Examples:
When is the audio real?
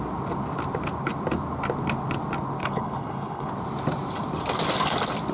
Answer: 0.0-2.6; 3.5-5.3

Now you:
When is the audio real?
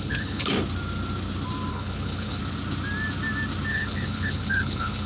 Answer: 0.5-1.7; 2.4-3.7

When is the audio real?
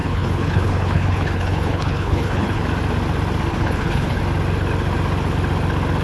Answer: 2.6-3.5; 4.2-6.0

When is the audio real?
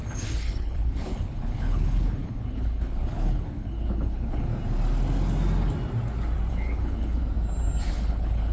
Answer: 4.5-6.5; 7.2-7.9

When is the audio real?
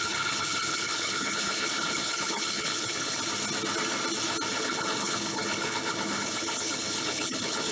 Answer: 3.2-4.5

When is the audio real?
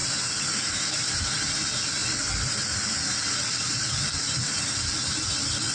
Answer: 0.0-5.7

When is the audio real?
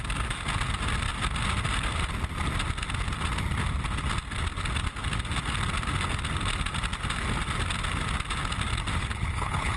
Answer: 0.0-9.0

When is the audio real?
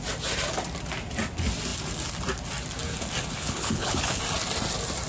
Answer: 0.0-3.4; 4.2-5.1